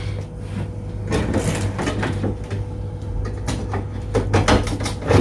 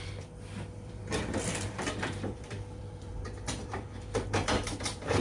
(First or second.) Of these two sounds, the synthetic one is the second